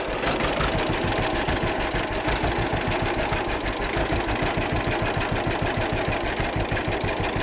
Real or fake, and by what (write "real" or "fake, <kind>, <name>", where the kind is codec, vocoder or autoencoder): real